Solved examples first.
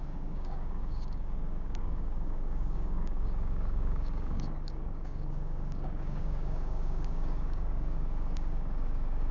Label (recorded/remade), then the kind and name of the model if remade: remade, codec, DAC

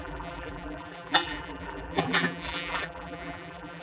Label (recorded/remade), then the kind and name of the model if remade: remade, vocoder, BigVGAN v2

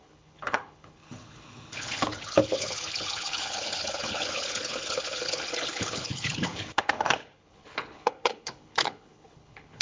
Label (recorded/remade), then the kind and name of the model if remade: remade, codec, HILCodec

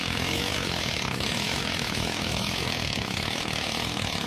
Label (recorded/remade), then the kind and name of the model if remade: remade, autoencoder, DAC-VAE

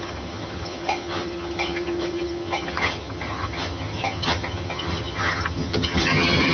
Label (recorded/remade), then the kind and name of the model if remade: remade, vocoder, HiFi-GAN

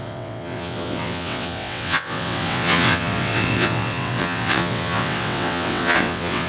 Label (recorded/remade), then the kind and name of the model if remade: remade, vocoder, WaveNeXt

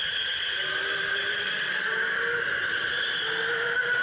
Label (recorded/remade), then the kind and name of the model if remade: recorded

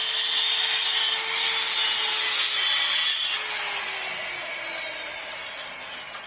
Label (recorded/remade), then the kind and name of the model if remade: recorded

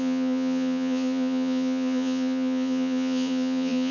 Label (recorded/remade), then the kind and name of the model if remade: remade, vocoder, Vocos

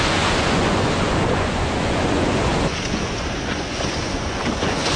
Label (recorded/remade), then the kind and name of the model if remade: remade, vocoder, Vocos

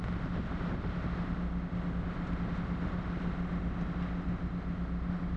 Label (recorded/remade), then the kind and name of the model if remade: recorded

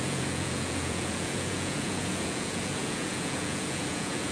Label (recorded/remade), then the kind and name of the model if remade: remade, vocoder, Vocos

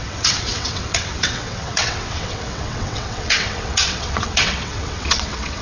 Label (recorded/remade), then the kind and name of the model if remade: remade, vocoder, WaveNeXt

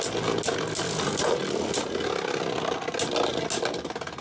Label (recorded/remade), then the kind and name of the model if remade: recorded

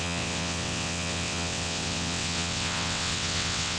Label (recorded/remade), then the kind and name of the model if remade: remade, vocoder, WaveNeXt